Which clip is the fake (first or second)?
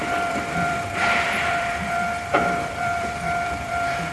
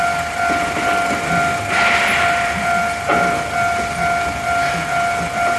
first